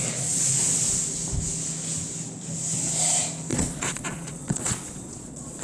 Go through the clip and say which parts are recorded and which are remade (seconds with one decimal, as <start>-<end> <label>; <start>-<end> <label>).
0.0-3.5 recorded; 3.5-5.6 remade

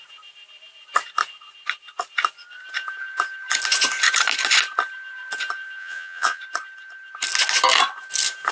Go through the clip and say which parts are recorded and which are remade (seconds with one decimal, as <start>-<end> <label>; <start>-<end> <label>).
0.0-5.8 recorded; 5.8-6.4 remade; 6.4-8.5 recorded

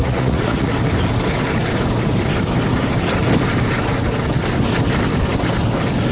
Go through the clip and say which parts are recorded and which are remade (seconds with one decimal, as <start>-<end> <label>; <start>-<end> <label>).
0.0-0.7 remade; 0.7-6.1 recorded

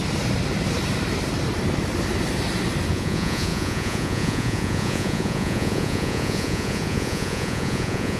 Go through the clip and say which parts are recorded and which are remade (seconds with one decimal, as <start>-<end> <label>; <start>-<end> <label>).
0.0-2.9 recorded; 2.9-8.2 remade